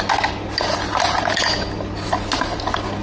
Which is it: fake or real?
real